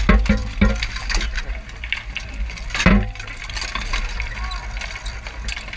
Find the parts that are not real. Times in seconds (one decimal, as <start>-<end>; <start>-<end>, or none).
none